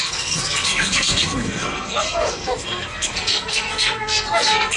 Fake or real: fake